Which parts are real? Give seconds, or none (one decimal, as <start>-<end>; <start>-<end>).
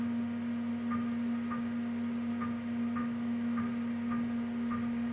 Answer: 0.0-3.0; 3.6-5.1